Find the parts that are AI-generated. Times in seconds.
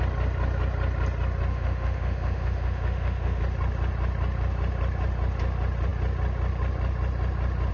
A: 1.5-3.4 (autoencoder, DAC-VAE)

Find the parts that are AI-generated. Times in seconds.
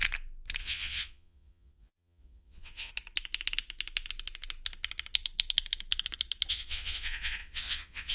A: 0.6-2.9 (vocoder, Vocos); 6.5-8.1